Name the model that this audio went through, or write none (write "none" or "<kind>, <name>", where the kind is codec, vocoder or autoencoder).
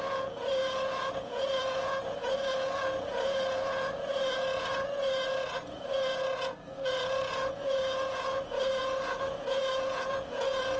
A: vocoder, Vocos